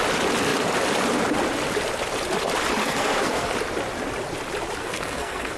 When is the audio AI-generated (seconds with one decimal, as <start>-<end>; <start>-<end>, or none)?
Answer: 2.8-3.5; 4.8-5.6